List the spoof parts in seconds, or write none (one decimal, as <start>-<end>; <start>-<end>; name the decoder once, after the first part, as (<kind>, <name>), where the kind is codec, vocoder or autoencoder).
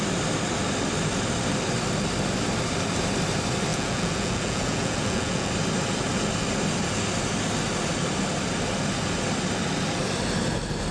3.7-5.5 (vocoder, Vocos)